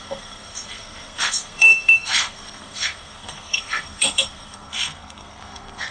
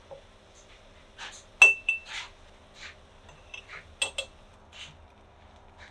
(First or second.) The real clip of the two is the second